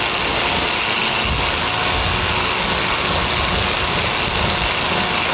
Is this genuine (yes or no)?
yes